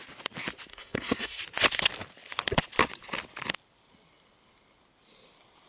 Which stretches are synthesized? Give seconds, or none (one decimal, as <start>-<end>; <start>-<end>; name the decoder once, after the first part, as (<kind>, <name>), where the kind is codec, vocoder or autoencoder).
0.7-1.4 (codec, SNAC)